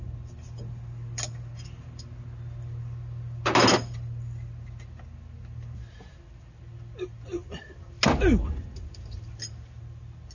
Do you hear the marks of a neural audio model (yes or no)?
no